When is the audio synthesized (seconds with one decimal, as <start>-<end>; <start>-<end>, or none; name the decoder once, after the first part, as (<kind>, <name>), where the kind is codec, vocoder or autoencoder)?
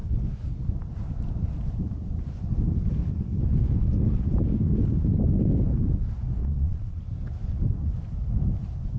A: 6.4-7.0 (vocoder, Vocos)